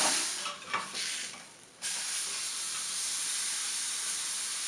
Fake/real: real